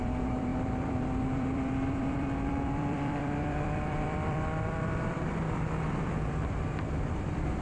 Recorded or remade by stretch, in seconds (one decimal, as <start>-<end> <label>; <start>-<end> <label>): 0.0-7.6 remade